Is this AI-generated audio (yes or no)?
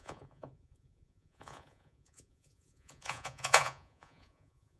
yes